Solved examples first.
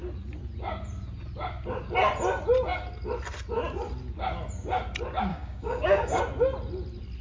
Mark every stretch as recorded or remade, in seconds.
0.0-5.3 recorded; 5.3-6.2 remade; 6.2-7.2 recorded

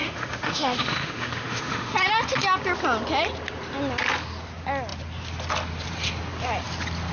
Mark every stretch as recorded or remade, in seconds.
0.0-1.9 remade; 1.9-7.1 recorded

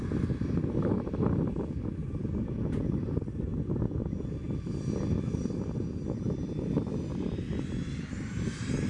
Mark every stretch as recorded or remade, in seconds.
0.0-8.9 recorded

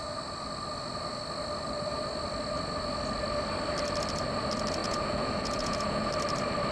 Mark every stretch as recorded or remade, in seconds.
0.0-4.8 recorded; 4.8-6.1 remade; 6.1-6.7 recorded

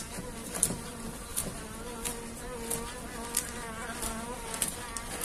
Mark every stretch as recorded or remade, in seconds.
0.0-5.2 recorded

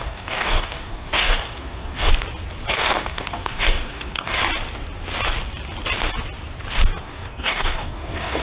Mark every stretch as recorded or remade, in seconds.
0.0-2.1 remade; 2.1-2.7 recorded; 2.7-4.4 remade; 4.4-7.0 recorded; 7.0-8.4 remade